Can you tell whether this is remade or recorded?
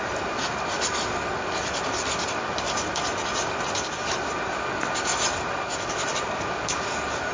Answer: recorded